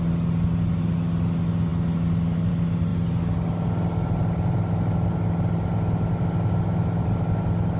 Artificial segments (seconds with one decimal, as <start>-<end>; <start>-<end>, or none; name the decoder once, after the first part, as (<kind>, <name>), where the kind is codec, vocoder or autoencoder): none